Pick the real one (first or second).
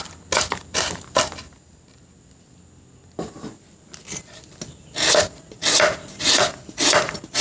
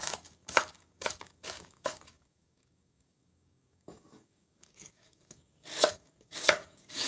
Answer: first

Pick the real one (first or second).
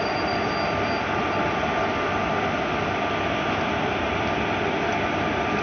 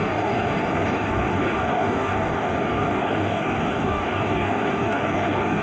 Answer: first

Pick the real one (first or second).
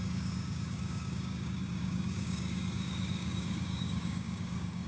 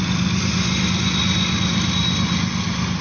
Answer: second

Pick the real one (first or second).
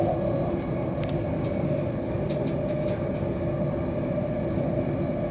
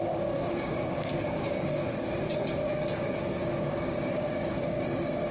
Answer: first